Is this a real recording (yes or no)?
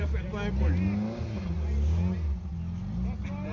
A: yes